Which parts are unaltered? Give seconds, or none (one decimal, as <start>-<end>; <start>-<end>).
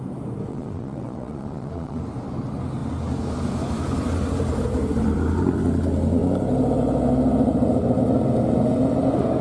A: 0.0-0.5; 2.0-9.4